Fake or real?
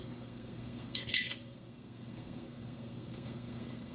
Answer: fake